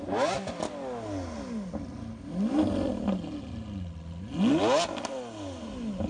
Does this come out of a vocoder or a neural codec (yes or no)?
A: no